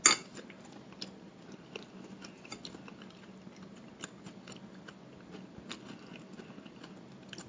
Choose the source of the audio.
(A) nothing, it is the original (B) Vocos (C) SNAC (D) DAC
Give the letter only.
A